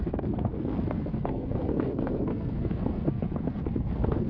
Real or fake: fake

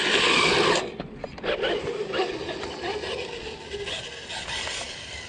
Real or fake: real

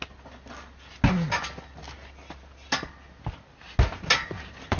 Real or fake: real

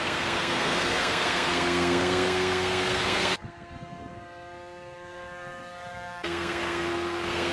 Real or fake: fake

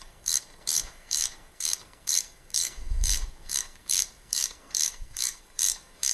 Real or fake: fake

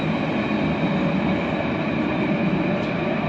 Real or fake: real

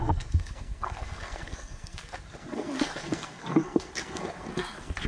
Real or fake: fake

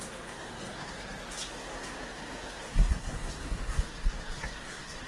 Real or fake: fake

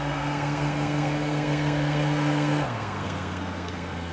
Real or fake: fake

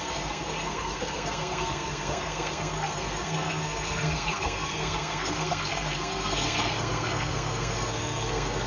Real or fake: fake